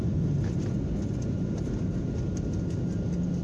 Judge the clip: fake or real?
real